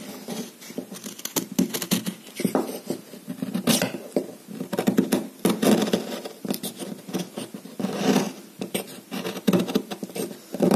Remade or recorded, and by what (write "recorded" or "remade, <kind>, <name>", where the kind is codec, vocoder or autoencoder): recorded